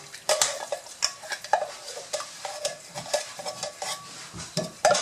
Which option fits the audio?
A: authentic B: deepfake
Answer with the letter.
B